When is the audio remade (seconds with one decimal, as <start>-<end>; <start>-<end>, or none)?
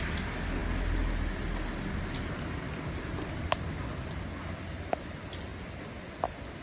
none